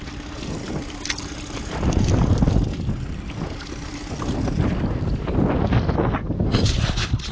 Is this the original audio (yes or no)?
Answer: yes